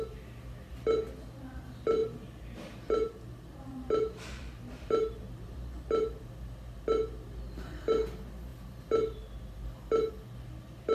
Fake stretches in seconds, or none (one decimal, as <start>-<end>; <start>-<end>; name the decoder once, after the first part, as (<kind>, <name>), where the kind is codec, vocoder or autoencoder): 2.0-6.2 (vocoder, BigVGAN v2)

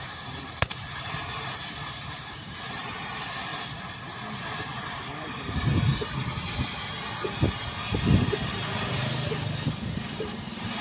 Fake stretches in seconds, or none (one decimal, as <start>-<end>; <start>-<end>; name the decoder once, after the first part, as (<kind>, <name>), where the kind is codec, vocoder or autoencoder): 0.0-3.5 (vocoder, BigVGAN v2); 4.6-6.9; 10.0-10.8

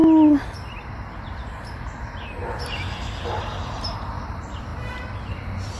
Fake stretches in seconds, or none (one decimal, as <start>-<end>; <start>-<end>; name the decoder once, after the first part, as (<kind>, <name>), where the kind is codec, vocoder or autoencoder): 1.2-2.4 (vocoder, BigVGAN v2); 3.3-5.8